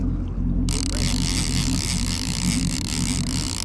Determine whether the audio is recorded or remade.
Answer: recorded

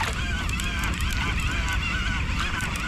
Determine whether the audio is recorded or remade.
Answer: remade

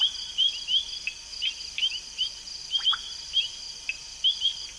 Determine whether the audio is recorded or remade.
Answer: recorded